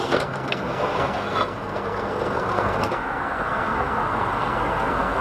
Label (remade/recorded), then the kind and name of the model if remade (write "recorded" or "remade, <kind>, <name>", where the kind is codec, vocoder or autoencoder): remade, codec, SNAC